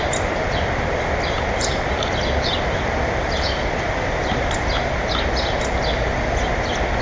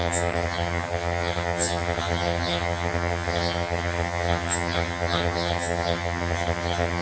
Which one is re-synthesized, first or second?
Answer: second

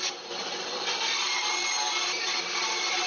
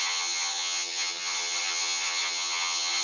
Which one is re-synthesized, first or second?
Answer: second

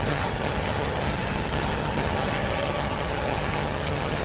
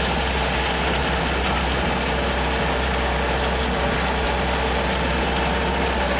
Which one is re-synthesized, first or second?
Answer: first